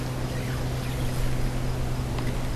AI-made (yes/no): no